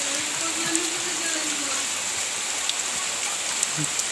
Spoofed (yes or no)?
no